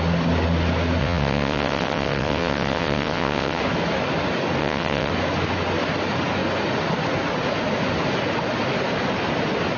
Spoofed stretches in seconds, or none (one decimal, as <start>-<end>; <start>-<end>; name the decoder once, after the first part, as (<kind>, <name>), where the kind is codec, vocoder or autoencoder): 1.0-3.6 (vocoder, WaveNeXt); 4.6-5.1